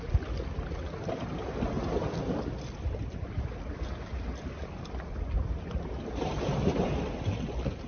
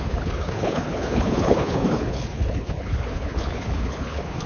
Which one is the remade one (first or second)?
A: second